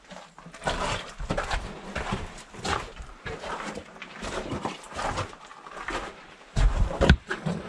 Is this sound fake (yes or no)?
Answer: yes